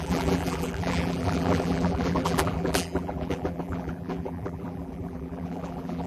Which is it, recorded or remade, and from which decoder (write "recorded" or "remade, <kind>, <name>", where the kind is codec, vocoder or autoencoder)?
remade, vocoder, BigVGAN v2